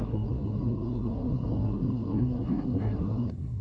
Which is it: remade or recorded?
remade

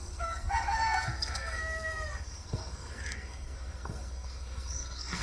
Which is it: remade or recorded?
remade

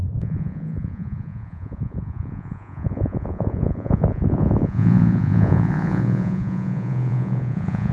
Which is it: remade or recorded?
remade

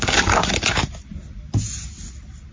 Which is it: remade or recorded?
recorded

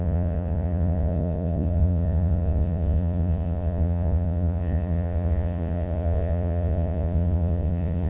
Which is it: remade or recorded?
remade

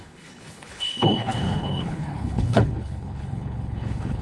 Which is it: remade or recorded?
remade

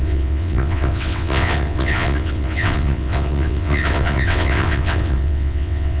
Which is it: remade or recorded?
remade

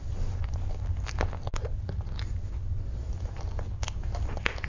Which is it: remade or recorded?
recorded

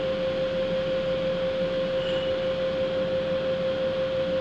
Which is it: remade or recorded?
recorded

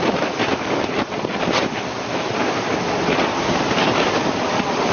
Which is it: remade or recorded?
remade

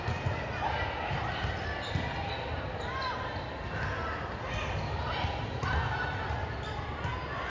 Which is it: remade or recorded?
recorded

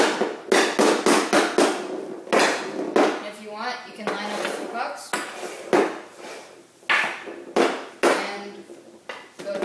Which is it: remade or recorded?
recorded